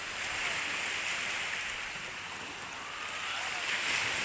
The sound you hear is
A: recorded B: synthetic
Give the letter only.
A